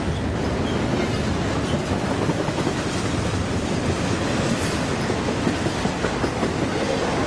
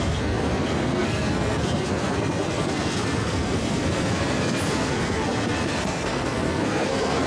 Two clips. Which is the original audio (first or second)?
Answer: first